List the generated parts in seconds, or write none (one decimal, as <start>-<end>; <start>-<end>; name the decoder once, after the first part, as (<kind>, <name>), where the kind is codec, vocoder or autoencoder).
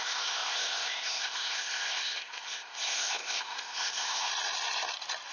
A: 0.0-4.3 (codec, ZipCodec)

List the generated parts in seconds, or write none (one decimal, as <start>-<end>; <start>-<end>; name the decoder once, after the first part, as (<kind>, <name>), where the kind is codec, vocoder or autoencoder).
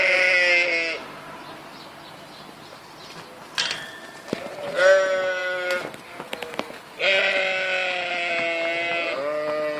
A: none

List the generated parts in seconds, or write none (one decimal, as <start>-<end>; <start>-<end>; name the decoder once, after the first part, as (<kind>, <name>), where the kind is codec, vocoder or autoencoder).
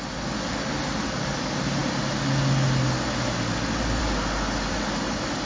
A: none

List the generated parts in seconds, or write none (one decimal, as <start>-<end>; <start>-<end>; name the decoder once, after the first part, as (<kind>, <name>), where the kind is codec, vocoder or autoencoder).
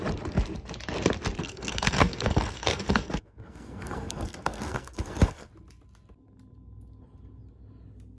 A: 1.4-5.5 (codec, SNAC)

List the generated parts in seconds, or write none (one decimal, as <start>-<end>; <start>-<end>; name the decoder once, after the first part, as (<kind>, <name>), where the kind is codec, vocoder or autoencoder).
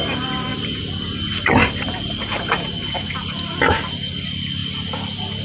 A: none